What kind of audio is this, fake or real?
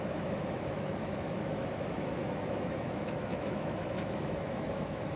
fake